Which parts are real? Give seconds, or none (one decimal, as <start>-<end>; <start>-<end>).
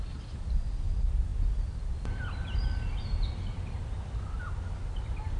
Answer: 0.0-5.4